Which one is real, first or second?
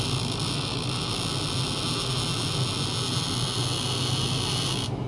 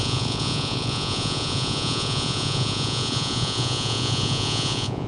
first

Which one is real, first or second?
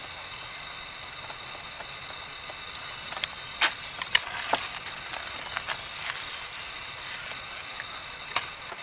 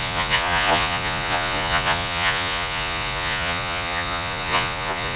first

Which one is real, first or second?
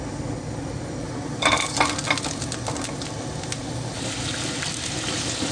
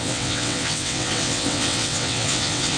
first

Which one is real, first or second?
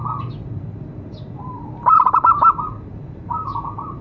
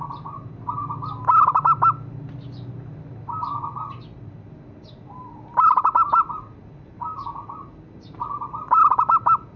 second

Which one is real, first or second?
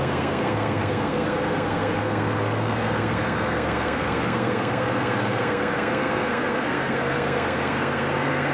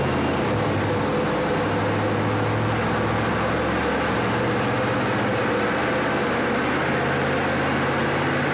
second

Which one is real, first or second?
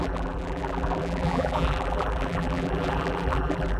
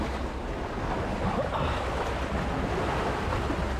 second